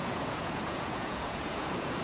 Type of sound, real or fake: fake